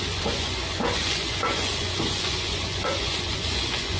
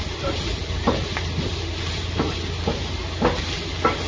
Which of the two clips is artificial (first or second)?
first